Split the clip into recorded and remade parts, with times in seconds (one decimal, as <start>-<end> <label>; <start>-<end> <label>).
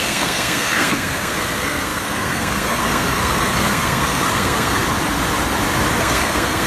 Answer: 0.0-4.8 remade; 4.8-6.0 recorded; 6.0-6.7 remade